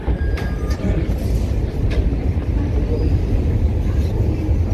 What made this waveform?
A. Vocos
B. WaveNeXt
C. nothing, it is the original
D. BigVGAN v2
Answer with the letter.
C